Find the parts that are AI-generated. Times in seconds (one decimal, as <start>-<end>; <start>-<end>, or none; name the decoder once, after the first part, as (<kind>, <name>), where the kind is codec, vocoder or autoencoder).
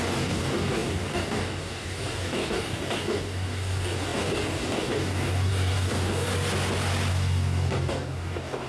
0.0-6.3 (codec, DAC); 7.1-8.7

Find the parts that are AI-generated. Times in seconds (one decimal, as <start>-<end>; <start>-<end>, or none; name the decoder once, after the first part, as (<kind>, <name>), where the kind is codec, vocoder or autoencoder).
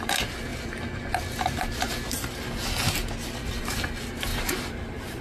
0.0-5.2 (vocoder, BigVGAN v2)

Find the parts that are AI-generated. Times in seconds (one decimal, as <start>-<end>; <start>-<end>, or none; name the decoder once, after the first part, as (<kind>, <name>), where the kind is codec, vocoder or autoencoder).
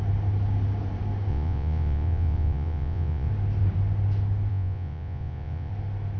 1.3-3.3 (vocoder, Vocos); 4.5-5.7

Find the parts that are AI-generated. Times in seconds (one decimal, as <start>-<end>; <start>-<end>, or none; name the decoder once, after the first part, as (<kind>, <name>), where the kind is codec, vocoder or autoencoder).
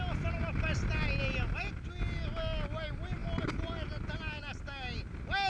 none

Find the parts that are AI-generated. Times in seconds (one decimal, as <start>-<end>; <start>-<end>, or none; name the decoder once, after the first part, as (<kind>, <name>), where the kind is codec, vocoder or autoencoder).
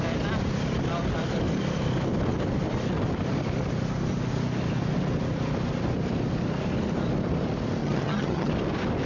7.8-8.5 (vocoder, HiFi-GAN)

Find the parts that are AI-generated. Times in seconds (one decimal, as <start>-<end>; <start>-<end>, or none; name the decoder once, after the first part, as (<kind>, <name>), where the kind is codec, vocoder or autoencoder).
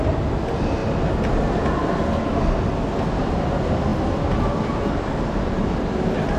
none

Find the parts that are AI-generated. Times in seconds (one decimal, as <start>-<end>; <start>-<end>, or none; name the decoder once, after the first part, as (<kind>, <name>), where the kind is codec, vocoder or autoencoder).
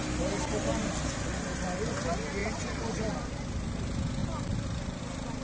2.4-3.1 (vocoder, BigVGAN v2); 4.2-5.0